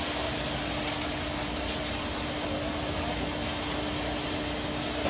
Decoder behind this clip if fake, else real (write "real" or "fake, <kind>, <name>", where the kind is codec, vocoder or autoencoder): real